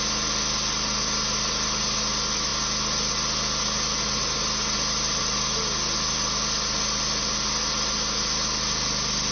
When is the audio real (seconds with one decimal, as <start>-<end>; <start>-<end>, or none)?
0.0-9.3